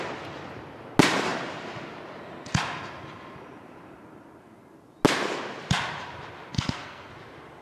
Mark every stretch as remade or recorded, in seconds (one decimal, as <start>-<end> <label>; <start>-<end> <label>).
0.0-6.5 recorded; 6.5-7.1 remade; 7.1-7.6 recorded